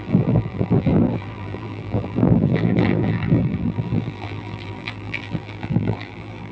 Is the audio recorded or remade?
remade